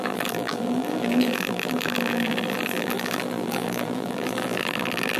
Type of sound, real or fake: fake